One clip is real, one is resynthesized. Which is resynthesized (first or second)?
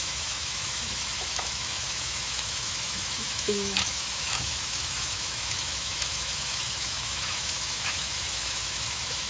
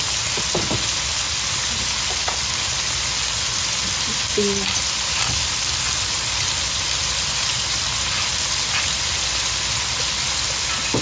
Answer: first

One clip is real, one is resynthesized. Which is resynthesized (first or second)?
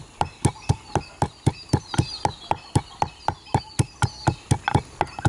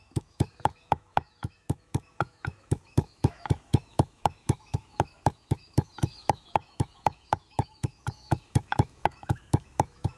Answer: second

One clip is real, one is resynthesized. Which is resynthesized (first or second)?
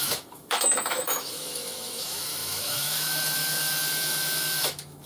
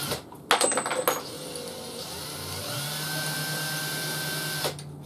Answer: first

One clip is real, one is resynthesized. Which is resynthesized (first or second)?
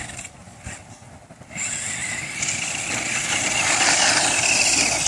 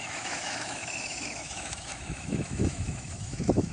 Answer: second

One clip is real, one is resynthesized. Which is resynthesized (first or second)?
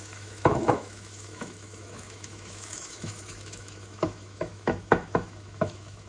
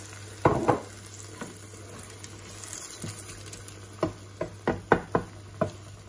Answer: first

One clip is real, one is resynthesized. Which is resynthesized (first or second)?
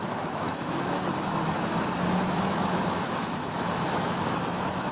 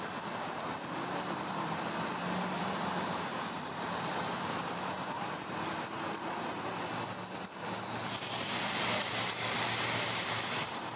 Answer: first